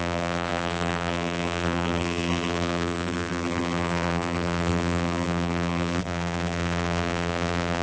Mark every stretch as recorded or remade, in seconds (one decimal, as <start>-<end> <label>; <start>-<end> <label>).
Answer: 0.0-7.8 remade